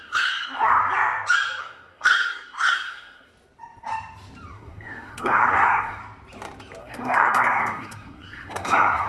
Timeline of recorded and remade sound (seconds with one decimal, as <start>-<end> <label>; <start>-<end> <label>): 0.0-0.8 remade; 0.8-1.6 recorded; 1.6-3.3 remade; 3.3-4.5 recorded; 4.5-6.0 remade; 6.0-6.8 recorded; 6.8-9.1 remade